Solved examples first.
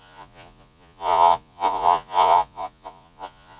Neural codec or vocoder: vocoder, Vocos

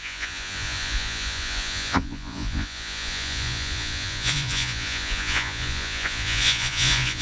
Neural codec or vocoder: vocoder, Vocos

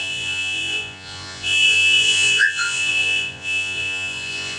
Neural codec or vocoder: vocoder, Vocos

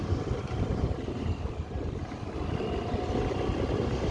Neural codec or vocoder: none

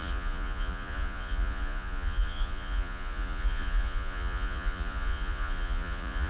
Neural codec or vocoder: vocoder, Vocos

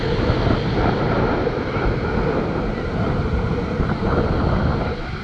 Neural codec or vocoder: none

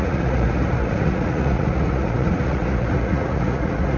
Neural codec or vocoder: vocoder, Vocos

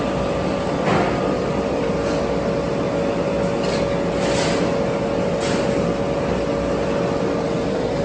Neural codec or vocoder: none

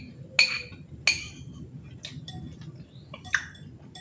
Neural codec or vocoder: none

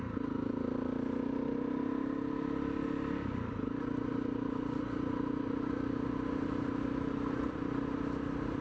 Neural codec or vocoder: none